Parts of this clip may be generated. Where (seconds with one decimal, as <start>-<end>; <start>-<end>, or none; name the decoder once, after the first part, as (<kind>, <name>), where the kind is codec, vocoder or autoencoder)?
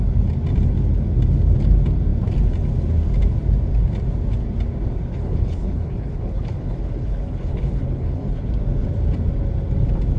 5.1-8.5 (codec, HILCodec)